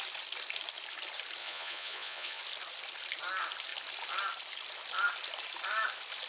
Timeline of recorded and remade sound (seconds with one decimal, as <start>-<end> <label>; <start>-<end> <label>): 0.0-1.4 recorded; 1.4-2.4 remade; 2.4-6.3 recorded